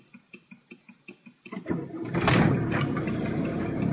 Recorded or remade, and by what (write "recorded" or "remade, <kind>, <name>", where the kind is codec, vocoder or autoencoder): recorded